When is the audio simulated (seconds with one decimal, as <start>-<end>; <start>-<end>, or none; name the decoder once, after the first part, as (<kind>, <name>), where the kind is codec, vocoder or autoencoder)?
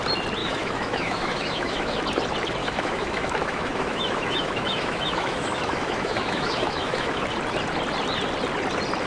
0.4-2.0 (autoencoder, DAC-VAE); 2.6-7.2